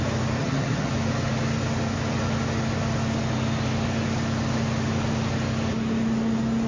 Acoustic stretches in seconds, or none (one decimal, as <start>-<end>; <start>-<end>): 0.0-0.4; 0.9-6.7